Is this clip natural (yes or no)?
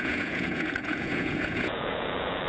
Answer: no